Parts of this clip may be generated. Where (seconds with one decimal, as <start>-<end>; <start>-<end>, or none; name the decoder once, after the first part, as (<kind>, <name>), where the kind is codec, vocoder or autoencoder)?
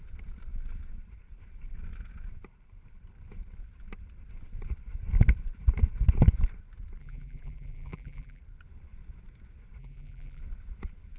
7.0-8.4 (vocoder, BigVGAN v2); 9.8-10.4